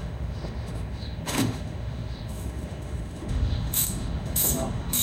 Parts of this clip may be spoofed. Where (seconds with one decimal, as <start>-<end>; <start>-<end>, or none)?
0.0-5.0